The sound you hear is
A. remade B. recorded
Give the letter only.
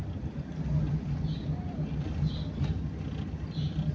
B